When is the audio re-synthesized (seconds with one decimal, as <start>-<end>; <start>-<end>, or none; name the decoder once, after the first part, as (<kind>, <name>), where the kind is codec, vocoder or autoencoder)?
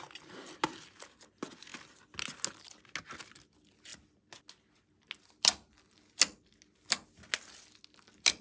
none